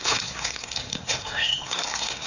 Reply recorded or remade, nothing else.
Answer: remade